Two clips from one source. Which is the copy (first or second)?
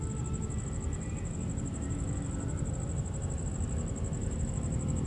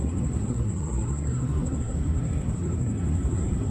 second